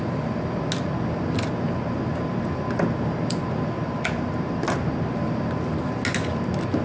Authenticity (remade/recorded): recorded